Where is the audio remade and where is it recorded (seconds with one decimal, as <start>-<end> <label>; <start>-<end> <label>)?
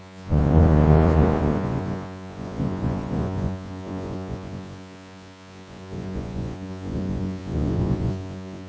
0.0-8.7 remade